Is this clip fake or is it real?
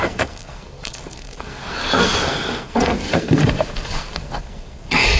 fake